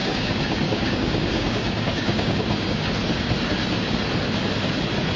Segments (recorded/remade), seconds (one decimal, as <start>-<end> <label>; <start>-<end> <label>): 0.0-2.9 remade; 2.9-5.2 recorded